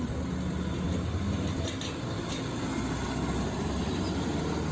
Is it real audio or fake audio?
real